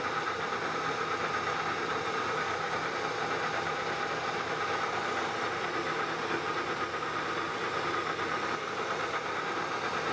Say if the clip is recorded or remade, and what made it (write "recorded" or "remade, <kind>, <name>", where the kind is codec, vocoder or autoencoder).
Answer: recorded